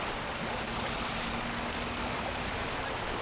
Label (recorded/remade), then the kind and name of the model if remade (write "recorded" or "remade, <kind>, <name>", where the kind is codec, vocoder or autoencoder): remade, vocoder, BigVGAN v2